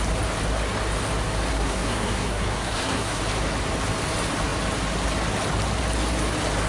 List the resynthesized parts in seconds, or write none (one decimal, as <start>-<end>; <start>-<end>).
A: 1.5-3.2